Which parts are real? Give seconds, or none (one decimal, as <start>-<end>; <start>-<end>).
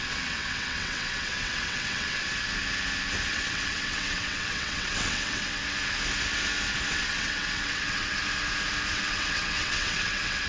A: 2.2-3.3; 5.6-6.9; 8.2-8.9